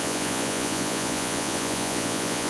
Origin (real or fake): fake